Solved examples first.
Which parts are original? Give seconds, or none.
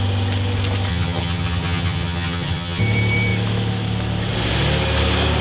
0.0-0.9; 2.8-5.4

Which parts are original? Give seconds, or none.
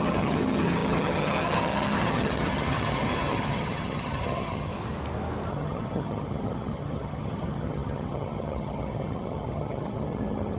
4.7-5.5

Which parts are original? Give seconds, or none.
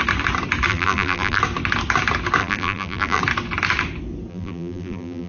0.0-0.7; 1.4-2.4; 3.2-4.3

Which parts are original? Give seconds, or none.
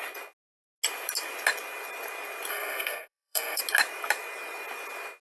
0.0-2.5; 3.6-5.3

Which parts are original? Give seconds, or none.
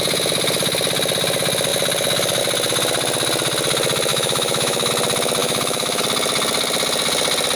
0.0-4.1; 4.9-5.4; 6.0-7.6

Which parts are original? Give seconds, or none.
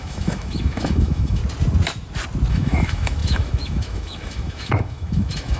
1.4-2.5